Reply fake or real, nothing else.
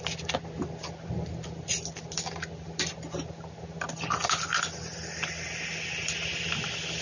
real